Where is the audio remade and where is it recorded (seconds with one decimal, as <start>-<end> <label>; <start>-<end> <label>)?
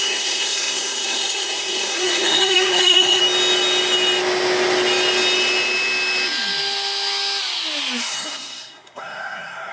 0.0-3.2 remade; 3.2-8.0 recorded; 8.0-9.7 remade